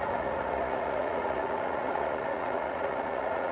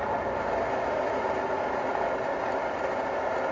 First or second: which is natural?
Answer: second